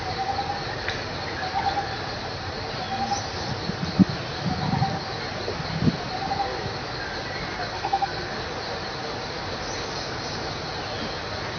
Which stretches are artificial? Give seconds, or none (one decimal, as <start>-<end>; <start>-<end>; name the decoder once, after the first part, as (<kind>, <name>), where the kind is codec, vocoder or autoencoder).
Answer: 7.7-8.3 (codec, SNAC)